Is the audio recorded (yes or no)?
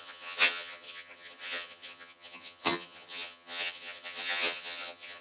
no